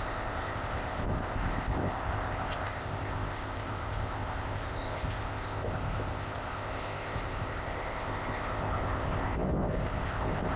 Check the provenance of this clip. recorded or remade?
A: remade